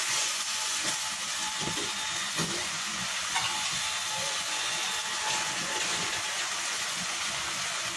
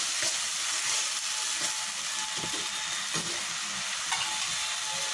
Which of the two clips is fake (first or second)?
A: first